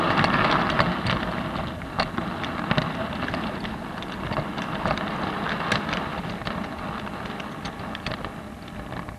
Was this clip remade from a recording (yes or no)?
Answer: no